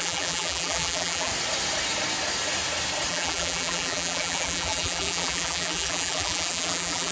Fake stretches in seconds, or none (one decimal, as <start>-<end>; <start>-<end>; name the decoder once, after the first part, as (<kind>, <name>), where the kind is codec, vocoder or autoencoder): 0.0-1.3 (vocoder, BigVGAN v2); 3.1-7.1